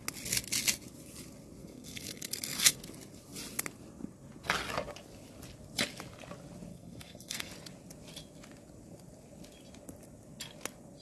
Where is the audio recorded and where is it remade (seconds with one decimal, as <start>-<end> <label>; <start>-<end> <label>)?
0.0-1.6 recorded; 1.6-2.8 remade; 2.8-6.7 recorded; 6.7-7.5 remade; 7.5-11.0 recorded